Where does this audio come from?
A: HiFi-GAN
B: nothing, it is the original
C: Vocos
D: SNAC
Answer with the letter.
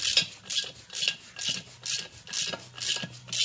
B